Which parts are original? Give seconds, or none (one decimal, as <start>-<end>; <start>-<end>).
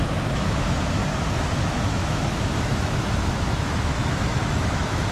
1.0-1.7